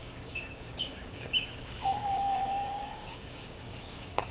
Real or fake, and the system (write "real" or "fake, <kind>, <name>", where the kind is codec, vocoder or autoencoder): fake, codec, DAC